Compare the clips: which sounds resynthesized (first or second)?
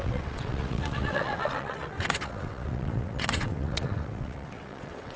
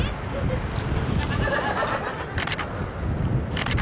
first